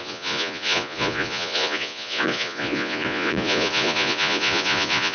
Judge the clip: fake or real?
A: fake